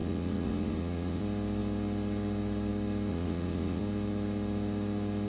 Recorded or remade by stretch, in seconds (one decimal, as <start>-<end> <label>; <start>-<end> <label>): 0.0-1.2 remade; 1.2-3.1 recorded; 3.1-3.8 remade; 3.8-5.3 recorded